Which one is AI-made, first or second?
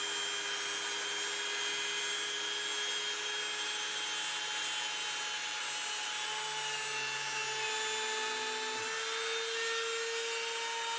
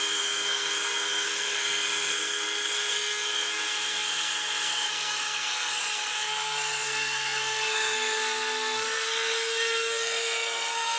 second